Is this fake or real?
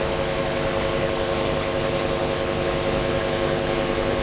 fake